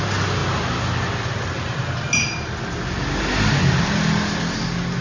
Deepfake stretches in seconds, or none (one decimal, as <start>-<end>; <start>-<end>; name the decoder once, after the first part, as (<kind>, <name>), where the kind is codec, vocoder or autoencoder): none